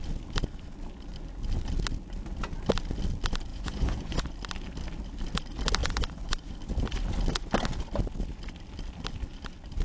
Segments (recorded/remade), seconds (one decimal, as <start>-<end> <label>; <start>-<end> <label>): 0.0-3.5 recorded; 3.5-4.3 remade; 4.3-5.8 recorded; 5.8-6.5 remade; 6.5-9.8 recorded